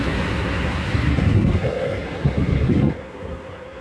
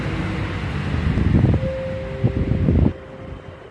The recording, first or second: second